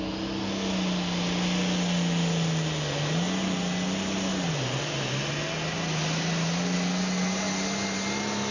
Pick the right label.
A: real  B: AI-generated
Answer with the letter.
A